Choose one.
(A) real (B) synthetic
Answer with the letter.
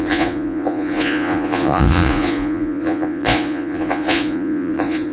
B